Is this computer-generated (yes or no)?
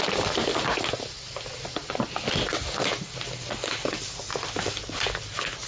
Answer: no